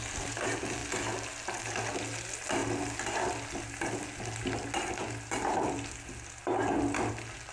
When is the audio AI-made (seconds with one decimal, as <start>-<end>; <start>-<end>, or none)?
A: none

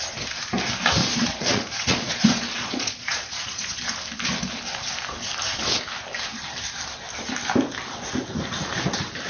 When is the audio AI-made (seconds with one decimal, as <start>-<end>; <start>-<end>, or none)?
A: 1.0-3.8

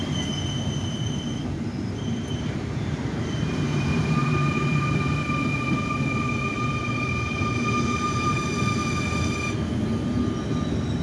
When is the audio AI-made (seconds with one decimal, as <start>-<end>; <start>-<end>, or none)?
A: 0.0-8.8; 10.4-11.0

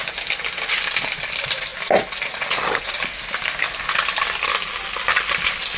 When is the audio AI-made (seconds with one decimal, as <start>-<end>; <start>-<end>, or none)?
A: none

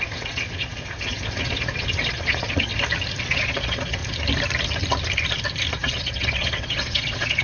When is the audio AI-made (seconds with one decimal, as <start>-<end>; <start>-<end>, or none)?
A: 0.0-2.7; 3.2-4.0; 5.7-7.4